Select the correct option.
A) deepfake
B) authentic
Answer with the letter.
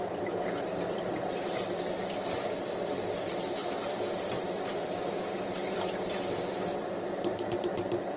A